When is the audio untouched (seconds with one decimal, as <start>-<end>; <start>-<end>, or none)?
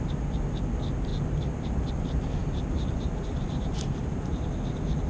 0.0-2.4; 4.3-5.1